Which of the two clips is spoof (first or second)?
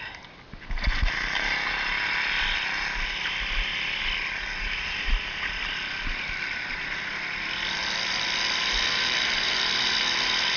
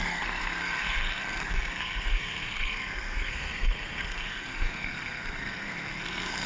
second